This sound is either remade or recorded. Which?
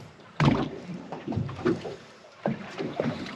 remade